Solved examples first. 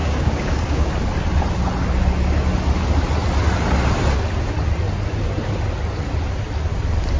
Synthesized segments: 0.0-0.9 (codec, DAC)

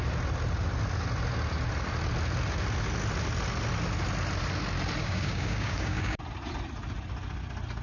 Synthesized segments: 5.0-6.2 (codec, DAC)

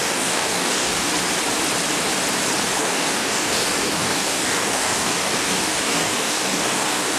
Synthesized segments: 0.0-1.1 (codec, DAC); 2.8-7.2